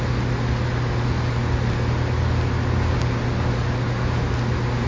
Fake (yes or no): no